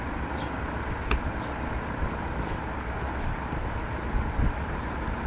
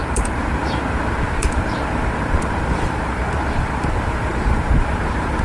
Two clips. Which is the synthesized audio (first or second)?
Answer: second